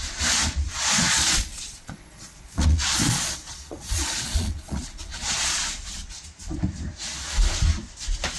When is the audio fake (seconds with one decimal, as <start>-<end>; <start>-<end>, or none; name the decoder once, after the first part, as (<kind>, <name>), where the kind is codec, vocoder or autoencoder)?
0.7-5.7 (vocoder, Vocos)